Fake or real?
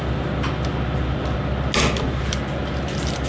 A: real